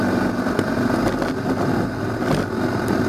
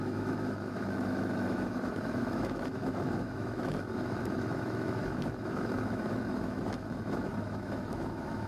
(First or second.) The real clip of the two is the first